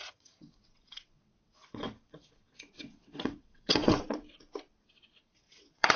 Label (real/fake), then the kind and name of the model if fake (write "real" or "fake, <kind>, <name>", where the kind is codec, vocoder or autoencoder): fake, vocoder, WaveNeXt